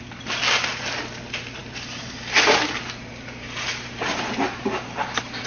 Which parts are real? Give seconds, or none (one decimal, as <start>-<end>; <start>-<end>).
0.0-5.5